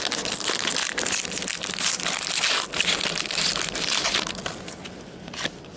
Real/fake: real